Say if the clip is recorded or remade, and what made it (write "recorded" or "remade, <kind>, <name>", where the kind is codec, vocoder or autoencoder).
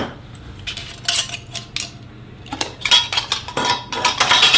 recorded